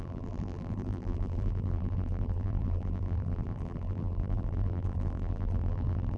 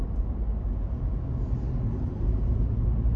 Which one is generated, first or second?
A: first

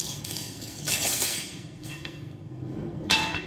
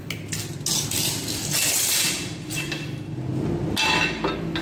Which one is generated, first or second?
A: first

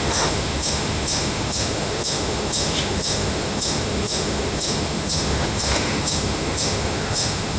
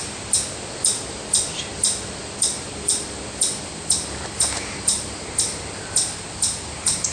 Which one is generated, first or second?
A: first